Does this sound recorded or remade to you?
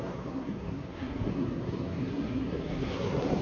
remade